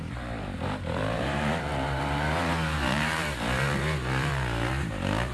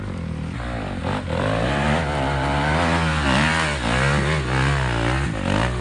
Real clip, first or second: second